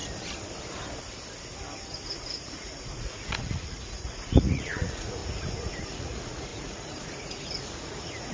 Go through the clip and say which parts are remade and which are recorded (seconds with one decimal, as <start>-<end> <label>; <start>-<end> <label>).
0.0-2.1 recorded; 2.1-5.2 remade; 5.2-5.8 recorded; 5.8-8.3 remade

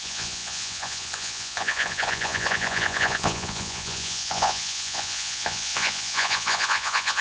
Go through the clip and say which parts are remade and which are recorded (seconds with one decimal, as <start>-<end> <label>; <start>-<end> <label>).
0.0-7.2 remade

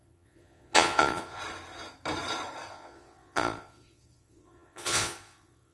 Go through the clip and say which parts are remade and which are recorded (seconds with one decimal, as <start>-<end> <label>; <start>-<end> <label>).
0.0-1.4 remade; 1.4-2.7 recorded; 2.7-5.7 remade

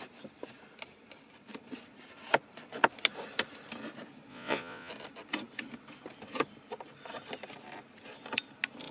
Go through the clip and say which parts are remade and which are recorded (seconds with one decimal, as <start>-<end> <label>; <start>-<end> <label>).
0.0-4.3 recorded; 4.3-4.9 remade; 4.9-8.9 recorded

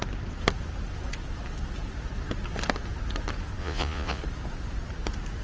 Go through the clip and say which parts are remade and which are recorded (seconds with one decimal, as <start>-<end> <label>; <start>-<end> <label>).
0.0-3.6 recorded; 3.6-4.2 remade; 4.2-5.4 recorded